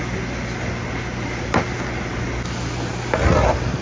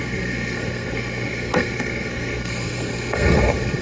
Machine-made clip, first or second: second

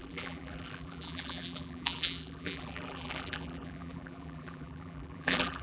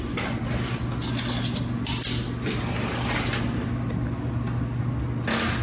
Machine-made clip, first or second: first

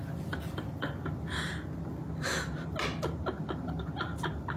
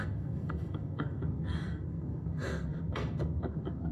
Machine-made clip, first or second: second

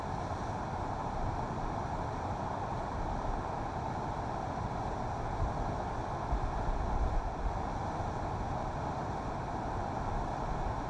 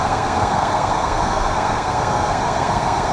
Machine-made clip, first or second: second